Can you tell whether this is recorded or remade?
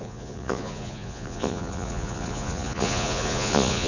remade